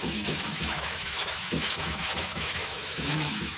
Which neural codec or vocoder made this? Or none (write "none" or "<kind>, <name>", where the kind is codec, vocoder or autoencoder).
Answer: autoencoder, DAC-VAE